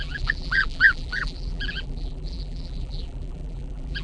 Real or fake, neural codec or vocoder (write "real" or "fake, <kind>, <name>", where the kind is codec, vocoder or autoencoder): fake, vocoder, BigVGAN v2